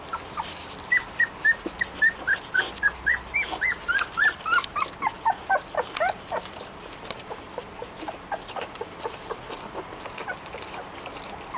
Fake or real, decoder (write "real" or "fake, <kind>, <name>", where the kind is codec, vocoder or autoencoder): real